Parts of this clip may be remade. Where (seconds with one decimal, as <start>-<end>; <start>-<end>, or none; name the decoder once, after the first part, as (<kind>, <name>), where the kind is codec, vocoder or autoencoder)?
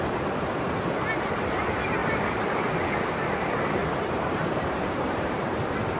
2.0-3.0 (vocoder, BigVGAN v2); 3.8-5.6